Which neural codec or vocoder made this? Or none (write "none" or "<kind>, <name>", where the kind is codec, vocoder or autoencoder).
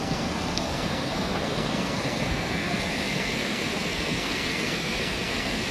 codec, SNAC